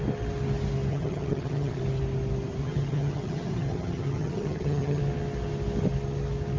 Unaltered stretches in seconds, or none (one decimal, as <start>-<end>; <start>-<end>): 0.0-0.9; 1.8-2.6; 5.0-6.6